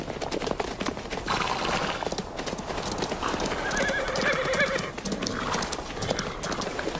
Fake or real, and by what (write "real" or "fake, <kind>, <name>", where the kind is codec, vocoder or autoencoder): real